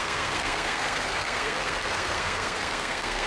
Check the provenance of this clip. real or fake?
fake